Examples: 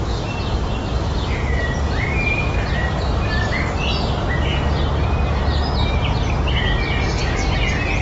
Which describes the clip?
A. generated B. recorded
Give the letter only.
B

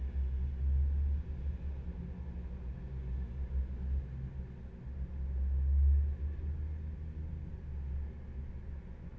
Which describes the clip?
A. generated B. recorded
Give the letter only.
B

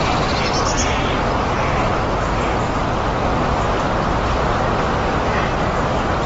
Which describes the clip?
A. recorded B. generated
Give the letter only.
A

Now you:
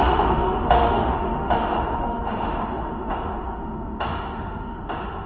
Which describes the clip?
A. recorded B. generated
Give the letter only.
B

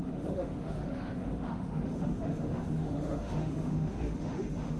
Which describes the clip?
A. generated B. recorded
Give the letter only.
A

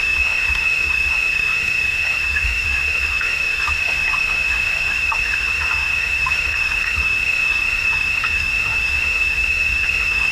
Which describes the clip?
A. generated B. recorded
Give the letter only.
A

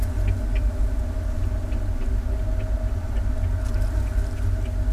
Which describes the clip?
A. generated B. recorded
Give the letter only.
B